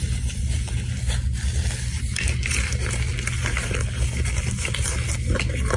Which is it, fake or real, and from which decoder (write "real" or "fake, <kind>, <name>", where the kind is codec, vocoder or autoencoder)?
real